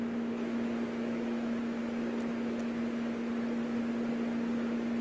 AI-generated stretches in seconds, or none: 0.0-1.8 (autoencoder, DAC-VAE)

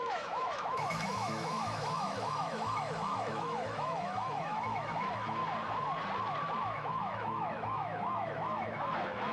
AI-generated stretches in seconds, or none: 0.0-5.4 (autoencoder, DAC-VAE); 6.6-9.3

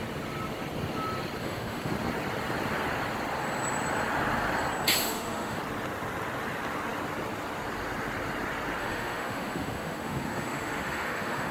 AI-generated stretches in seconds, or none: 1.4-1.9 (autoencoder, DAC-VAE); 5.0-5.6; 8.8-11.5

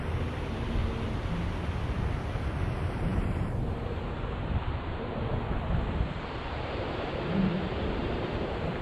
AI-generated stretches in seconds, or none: 0.0-0.8 (vocoder, BigVGAN v2); 2.6-8.8

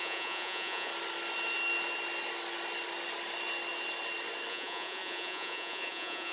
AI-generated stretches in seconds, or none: 0.0-0.9 (vocoder, Vocos); 4.5-6.3

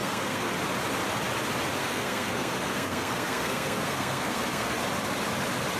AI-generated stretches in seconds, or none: 0.0-0.5 (codec, SNAC); 1.8-4.7